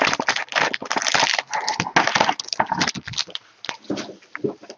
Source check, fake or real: real